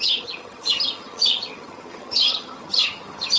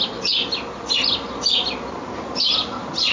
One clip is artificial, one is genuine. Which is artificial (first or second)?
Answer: first